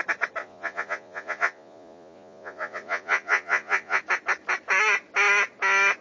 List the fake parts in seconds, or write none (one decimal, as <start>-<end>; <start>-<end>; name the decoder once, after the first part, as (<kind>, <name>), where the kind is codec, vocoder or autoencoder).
0.4-4.0 (vocoder, Vocos)